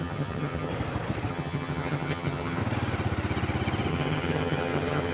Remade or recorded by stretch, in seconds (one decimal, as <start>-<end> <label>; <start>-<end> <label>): 0.0-0.7 remade; 0.7-1.3 recorded; 1.3-2.6 remade; 2.6-3.9 recorded; 3.9-5.1 remade